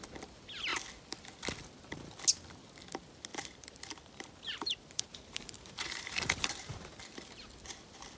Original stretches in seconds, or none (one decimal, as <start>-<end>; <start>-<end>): 0.0-3.3; 7.5-8.2